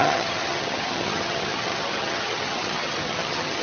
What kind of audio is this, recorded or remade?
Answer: remade